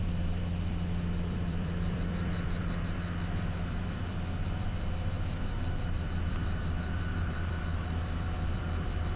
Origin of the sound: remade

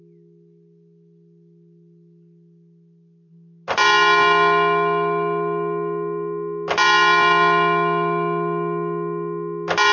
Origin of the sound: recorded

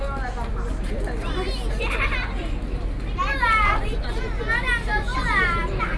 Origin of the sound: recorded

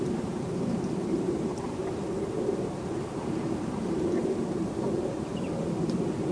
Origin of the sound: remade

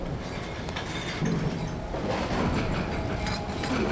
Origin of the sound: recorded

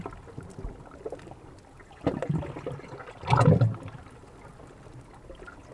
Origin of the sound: recorded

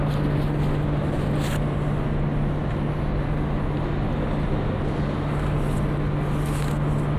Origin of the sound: recorded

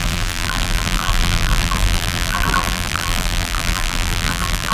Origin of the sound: remade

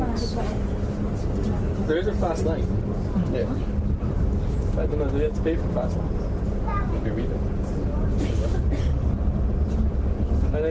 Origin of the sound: recorded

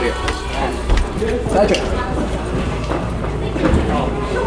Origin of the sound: remade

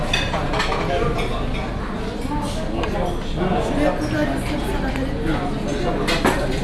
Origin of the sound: recorded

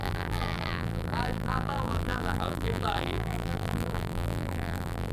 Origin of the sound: remade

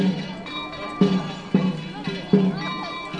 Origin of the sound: recorded